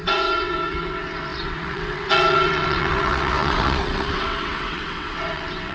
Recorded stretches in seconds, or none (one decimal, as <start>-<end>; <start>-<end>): none